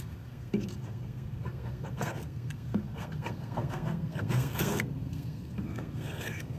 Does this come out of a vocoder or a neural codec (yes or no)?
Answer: yes